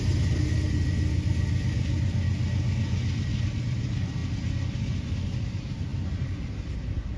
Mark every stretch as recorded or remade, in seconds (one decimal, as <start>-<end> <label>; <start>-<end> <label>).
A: 0.0-7.2 recorded